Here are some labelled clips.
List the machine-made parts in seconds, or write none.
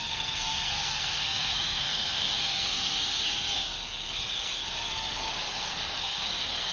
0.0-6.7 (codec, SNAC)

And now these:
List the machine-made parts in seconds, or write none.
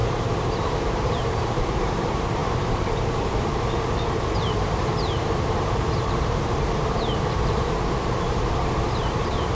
0.0-9.5 (vocoder, BigVGAN v2)